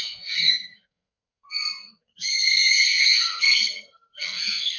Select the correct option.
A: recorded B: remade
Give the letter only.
B